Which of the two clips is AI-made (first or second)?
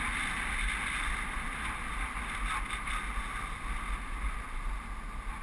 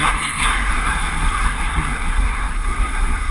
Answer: second